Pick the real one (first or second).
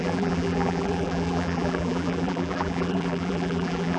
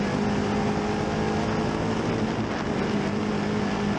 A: second